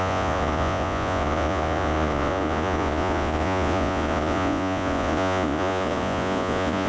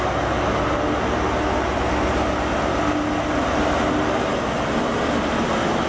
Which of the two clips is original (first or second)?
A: second